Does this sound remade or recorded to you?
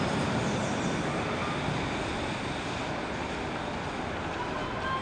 recorded